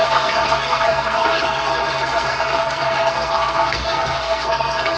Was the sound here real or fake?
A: fake